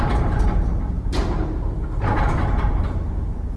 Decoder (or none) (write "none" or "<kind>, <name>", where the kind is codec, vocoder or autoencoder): none